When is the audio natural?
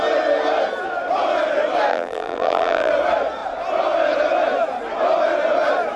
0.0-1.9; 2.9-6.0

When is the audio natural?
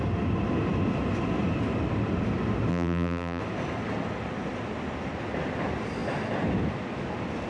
0.0-2.7; 3.4-7.5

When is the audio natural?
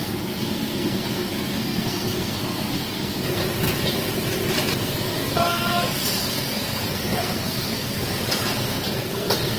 3.4-4.8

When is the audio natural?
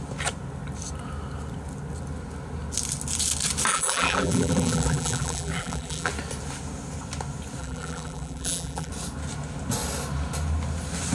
0.0-3.7; 6.1-7.6; 8.9-11.1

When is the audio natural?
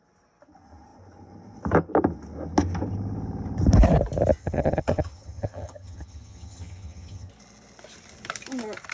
0.0-4.4; 7.3-8.9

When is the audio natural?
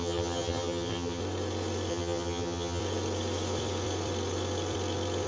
1.2-1.9; 2.8-5.3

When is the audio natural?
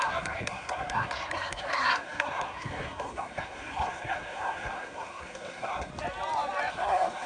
5.9-6.7